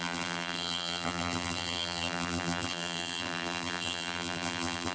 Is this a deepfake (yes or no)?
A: yes